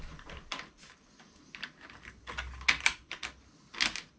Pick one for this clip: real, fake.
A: real